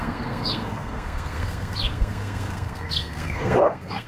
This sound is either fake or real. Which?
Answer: fake